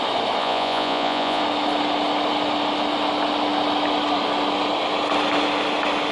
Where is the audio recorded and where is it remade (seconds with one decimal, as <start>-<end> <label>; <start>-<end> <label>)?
0.0-0.4 recorded; 0.4-1.4 remade; 1.4-6.1 recorded